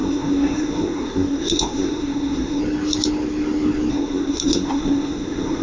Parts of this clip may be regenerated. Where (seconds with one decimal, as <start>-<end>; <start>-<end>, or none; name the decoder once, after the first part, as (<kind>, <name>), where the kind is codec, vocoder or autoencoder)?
0.0-2.6 (codec, SNAC); 3.9-5.6

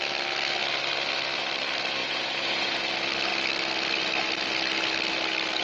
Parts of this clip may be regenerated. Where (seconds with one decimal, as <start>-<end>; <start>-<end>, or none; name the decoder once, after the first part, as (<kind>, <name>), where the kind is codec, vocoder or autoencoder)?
2.0-2.8 (vocoder, Vocos)

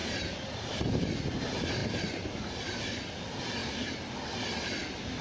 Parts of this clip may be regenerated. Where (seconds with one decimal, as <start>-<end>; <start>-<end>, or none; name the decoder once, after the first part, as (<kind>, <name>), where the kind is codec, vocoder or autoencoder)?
0.0-1.1 (vocoder, BigVGAN v2); 3.6-4.1

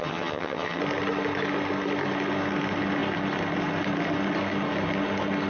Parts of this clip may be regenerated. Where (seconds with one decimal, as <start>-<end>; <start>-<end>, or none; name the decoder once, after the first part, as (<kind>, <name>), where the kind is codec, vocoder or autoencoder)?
0.0-0.8 (vocoder, HiFi-GAN)

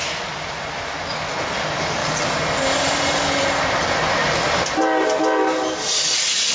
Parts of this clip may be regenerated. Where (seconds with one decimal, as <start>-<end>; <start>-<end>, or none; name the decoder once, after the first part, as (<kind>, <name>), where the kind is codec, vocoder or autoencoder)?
2.0-2.6 (vocoder, BigVGAN v2)

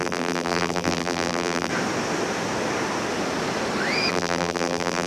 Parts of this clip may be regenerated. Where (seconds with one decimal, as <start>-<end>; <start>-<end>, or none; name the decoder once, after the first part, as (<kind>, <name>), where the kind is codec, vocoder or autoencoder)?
0.0-1.7 (vocoder, BigVGAN v2); 4.1-5.1

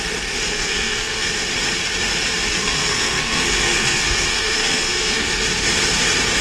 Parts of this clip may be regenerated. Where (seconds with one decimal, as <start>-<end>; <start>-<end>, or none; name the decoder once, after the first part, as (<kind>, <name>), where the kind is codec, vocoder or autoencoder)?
0.5-1.3 (codec, SNAC); 2.5-5.3